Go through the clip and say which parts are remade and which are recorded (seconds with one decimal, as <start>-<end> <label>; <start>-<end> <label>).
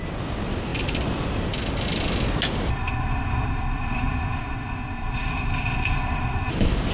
0.0-2.7 recorded; 2.7-6.5 remade; 6.5-6.9 recorded